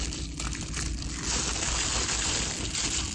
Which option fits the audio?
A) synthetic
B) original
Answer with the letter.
B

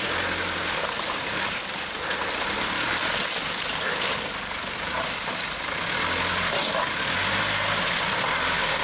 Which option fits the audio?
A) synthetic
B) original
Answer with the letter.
B